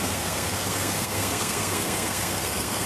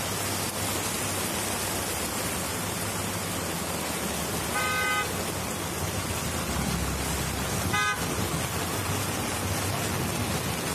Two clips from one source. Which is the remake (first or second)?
first